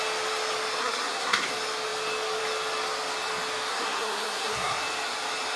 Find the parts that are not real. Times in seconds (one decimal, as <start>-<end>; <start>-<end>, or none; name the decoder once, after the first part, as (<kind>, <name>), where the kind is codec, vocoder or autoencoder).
0.8-1.5 (codec, SNAC); 3.7-4.8